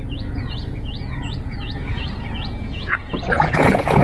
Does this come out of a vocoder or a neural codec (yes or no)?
yes